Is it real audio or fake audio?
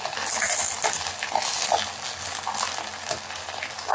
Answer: real